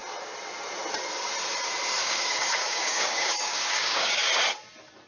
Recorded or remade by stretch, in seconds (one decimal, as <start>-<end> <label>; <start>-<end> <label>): 0.0-2.0 recorded; 2.0-4.3 remade; 4.3-5.1 recorded